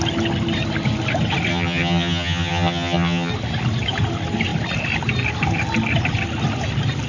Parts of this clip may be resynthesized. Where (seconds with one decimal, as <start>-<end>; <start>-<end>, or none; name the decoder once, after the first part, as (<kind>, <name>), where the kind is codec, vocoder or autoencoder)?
1.5-3.3 (vocoder, HiFi-GAN)